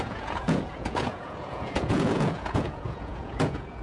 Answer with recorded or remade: remade